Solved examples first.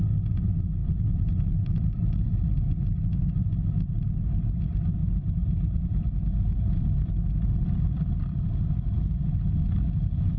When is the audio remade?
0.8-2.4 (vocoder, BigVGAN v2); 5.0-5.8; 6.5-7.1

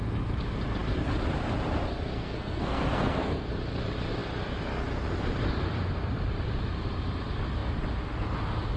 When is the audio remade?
2.1-3.5 (codec, SNAC)

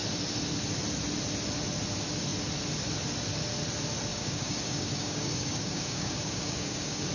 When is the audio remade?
4.1-7.1 (codec, DAC)

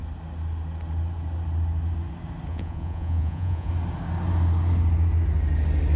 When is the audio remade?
2.5-3.7 (vocoder, Vocos)

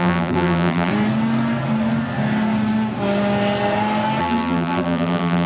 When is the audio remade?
0.0-0.9 (vocoder, BigVGAN v2); 4.2-5.5

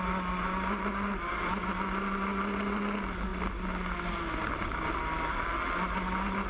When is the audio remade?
none